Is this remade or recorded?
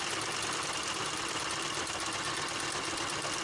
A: remade